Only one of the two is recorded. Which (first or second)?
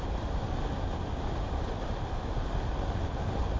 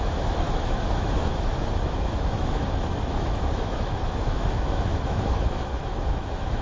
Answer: first